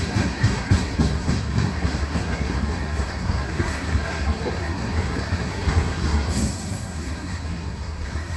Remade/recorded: remade